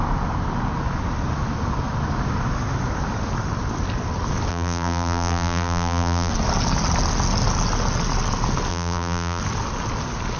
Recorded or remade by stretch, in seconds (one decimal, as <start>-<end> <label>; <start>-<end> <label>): 0.0-4.5 recorded; 4.5-6.3 remade; 6.3-8.7 recorded; 8.7-9.4 remade; 9.4-10.4 recorded